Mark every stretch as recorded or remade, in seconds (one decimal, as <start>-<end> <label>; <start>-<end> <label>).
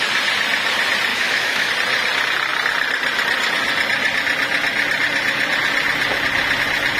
0.0-1.1 recorded; 1.1-1.7 remade; 1.7-7.0 recorded